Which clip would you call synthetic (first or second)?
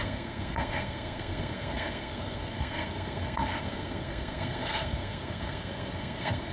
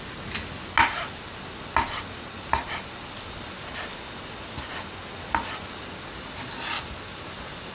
first